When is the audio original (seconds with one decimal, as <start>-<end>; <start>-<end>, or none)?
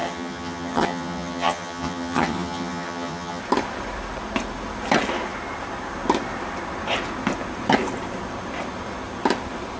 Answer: 3.4-9.8